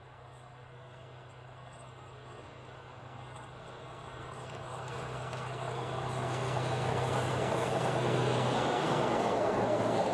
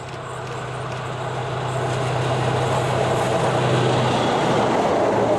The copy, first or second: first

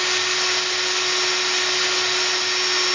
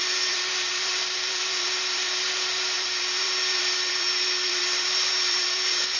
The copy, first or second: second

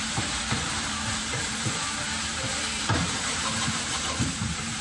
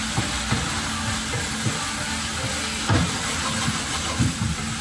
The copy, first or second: first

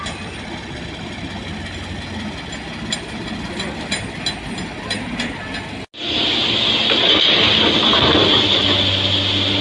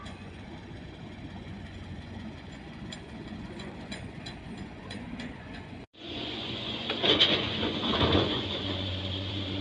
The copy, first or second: second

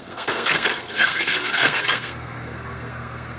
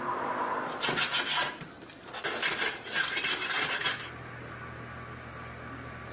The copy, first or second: first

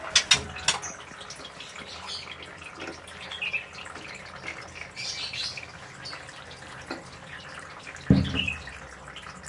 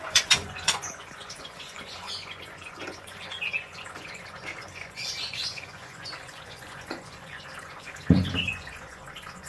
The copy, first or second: second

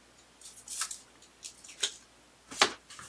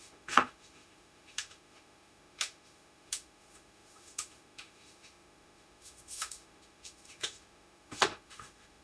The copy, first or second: second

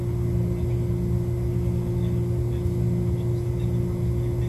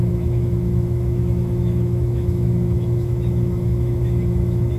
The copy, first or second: second